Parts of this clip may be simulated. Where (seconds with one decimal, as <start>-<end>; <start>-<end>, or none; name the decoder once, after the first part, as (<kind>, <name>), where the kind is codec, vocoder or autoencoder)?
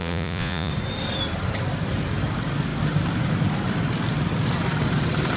0.0-0.7 (vocoder, Vocos)